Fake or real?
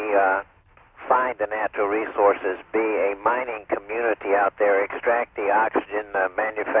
real